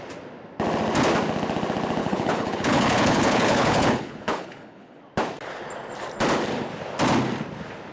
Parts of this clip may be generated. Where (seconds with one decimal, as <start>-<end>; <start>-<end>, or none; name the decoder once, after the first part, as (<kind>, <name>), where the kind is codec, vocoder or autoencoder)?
2.0-5.0 (codec, HILCodec)